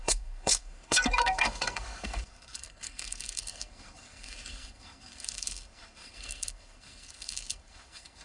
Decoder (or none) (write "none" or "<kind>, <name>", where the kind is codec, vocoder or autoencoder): codec, SNAC